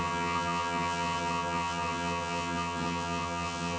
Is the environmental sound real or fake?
fake